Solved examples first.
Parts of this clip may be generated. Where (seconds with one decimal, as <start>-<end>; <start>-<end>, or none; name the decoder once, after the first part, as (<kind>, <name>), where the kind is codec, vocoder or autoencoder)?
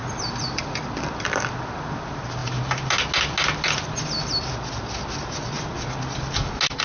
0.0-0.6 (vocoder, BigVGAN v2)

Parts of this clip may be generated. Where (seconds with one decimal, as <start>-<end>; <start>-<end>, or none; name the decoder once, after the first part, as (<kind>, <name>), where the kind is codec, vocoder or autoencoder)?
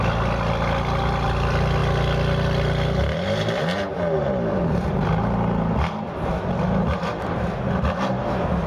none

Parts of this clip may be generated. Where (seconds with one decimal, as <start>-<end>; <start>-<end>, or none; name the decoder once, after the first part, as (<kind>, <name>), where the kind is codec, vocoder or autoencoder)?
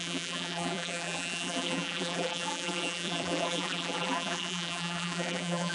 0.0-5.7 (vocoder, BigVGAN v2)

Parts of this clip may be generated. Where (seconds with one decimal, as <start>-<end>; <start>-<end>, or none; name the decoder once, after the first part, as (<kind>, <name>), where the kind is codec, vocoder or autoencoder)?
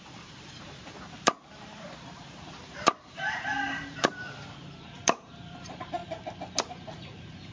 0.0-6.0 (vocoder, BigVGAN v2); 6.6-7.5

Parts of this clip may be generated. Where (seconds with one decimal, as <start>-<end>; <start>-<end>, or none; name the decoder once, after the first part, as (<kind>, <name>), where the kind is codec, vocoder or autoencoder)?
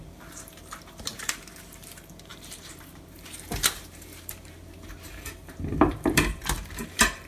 0.0-7.3 (vocoder, BigVGAN v2)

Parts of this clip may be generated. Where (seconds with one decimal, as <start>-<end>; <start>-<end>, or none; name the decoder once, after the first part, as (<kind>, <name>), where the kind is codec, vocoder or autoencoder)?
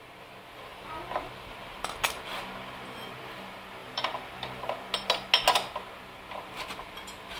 0.7-1.8 (vocoder, BigVGAN v2); 3.8-4.7